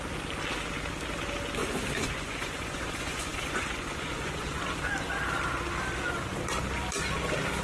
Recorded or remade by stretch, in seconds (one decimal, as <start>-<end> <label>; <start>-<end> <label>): 0.0-1.6 recorded; 1.6-4.6 remade; 4.6-7.6 recorded